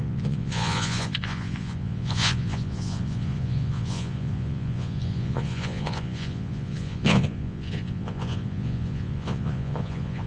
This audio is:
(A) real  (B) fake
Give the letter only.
B